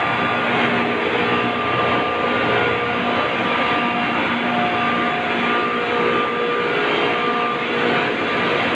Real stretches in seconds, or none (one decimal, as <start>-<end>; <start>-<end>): 0.0-8.7